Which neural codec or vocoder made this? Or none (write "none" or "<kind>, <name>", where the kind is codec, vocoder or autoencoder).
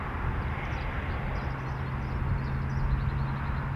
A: none